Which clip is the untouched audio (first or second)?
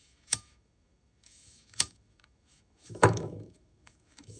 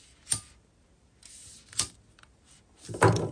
second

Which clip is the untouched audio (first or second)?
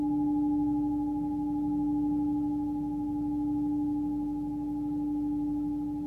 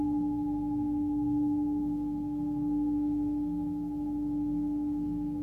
first